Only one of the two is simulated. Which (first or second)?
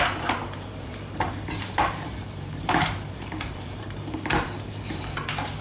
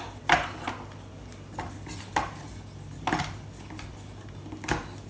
first